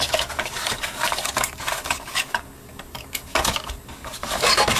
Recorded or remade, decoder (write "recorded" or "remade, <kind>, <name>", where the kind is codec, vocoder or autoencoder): remade, codec, DAC